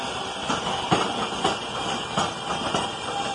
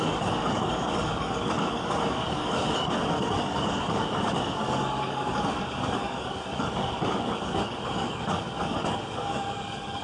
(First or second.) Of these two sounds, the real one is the first